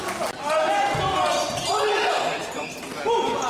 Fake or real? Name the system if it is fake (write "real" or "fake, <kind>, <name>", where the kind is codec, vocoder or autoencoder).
real